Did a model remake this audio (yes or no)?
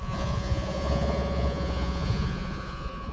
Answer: yes